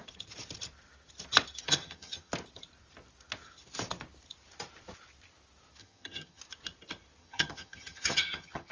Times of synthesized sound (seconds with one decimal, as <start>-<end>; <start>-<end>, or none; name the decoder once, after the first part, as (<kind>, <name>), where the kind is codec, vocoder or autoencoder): 1.6-2.3 (vocoder, HiFi-GAN); 5.8-6.4; 7.2-8.7